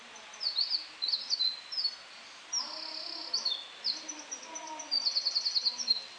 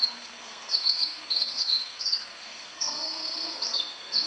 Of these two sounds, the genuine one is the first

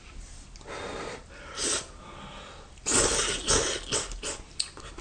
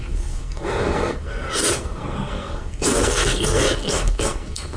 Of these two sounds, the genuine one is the first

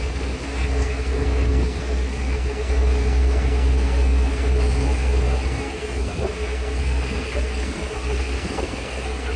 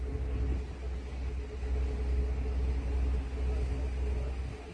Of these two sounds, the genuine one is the second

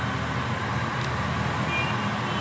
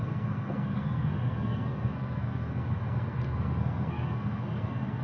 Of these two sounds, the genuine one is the first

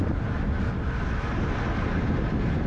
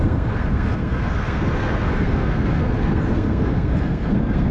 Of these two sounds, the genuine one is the first